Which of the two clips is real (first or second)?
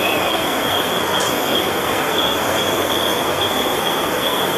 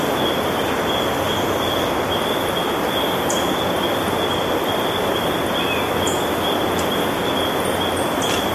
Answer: second